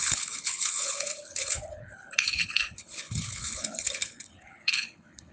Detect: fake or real fake